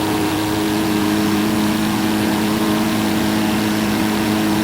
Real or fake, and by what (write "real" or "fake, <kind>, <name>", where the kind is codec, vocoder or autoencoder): fake, vocoder, Vocos